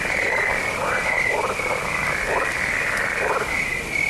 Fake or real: real